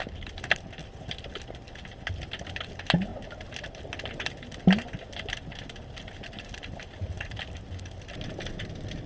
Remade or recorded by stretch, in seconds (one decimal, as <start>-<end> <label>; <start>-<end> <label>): 0.0-0.8 recorded; 0.8-1.4 remade; 1.4-9.1 recorded